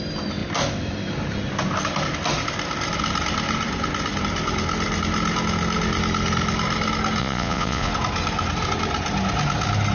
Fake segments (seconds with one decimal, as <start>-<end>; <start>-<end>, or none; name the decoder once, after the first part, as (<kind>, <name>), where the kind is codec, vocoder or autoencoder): 7.2-7.9 (vocoder, Vocos)